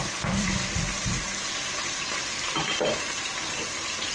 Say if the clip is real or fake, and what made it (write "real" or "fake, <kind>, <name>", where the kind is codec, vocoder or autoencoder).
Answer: fake, vocoder, BigVGAN v2